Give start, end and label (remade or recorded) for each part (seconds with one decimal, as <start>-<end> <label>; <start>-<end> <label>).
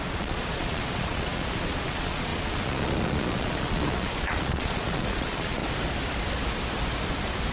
0.0-5.6 remade; 5.6-7.5 recorded